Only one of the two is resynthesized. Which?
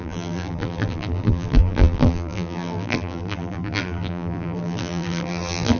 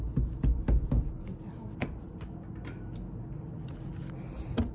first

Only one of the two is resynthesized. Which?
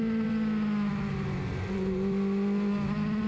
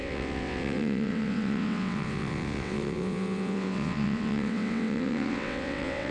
second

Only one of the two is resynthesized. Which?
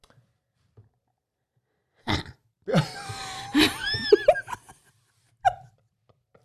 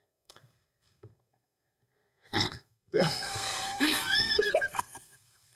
second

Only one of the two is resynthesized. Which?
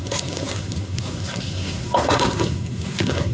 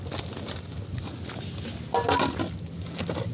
first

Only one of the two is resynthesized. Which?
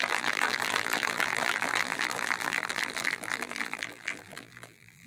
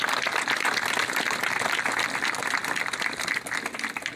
first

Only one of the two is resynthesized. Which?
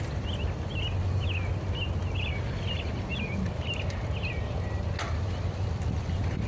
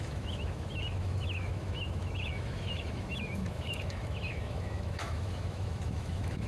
second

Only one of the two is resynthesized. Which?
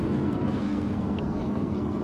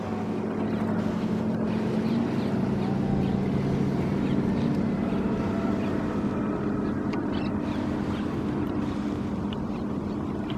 first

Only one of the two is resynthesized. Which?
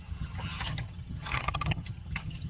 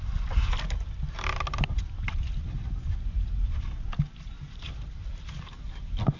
first